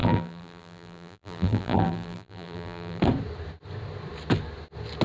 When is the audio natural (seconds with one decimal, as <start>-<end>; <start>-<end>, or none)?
3.0-5.0